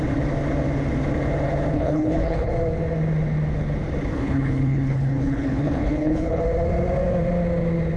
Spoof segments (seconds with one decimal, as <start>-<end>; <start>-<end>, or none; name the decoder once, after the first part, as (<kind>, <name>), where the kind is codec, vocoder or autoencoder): 1.7-2.5 (codec, HILCodec); 4.1-6.4